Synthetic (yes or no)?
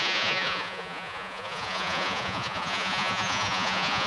yes